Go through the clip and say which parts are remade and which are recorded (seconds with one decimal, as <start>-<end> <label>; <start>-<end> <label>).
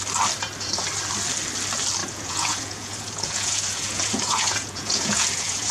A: 0.0-2.0 recorded; 2.0-5.7 remade